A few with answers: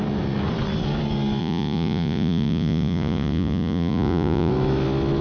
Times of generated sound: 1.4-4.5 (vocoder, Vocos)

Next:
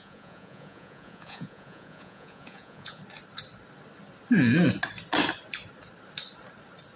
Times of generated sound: 0.0-3.0 (vocoder, Vocos)

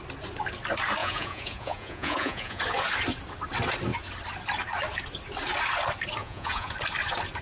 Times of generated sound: 1.0-2.6 (vocoder, Vocos); 6.2-6.7

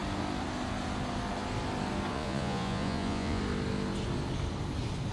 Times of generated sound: 2.1-3.4 (vocoder, Vocos)

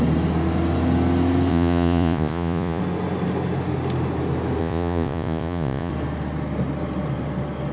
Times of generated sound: 1.5-2.8 (vocoder, Vocos); 4.6-5.9

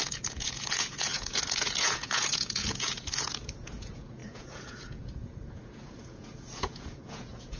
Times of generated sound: 0.0-7.6 (vocoder, Vocos)